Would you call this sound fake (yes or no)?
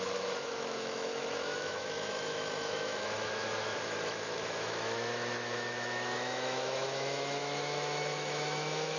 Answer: yes